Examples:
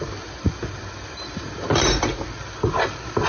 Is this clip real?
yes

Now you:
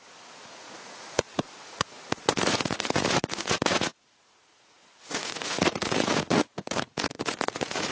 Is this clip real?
no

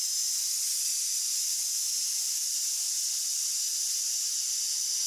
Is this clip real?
yes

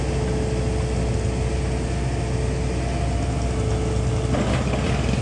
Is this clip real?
yes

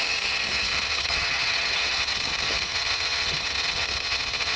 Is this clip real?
no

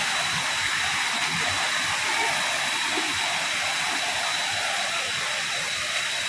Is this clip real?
yes